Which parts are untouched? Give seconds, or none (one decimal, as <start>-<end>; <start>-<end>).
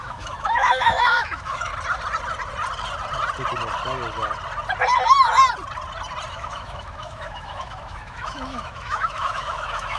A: 1.7-6.3